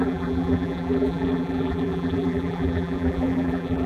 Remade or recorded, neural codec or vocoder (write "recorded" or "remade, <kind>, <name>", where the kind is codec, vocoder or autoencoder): remade, vocoder, BigVGAN v2